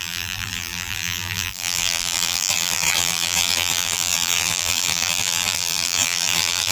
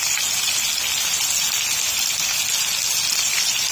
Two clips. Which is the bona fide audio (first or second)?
second